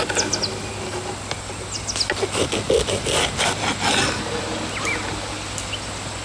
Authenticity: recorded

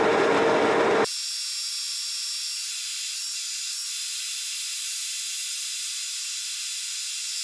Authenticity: recorded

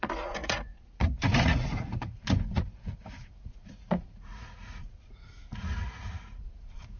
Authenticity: remade